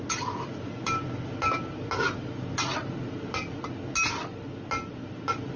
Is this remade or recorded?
recorded